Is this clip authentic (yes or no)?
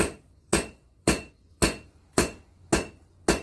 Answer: no